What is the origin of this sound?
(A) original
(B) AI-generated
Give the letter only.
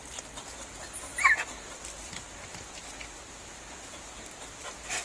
A